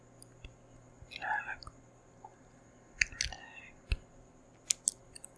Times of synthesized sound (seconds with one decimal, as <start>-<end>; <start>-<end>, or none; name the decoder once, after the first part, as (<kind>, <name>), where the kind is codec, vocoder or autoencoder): none